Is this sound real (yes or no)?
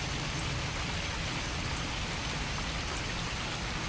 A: yes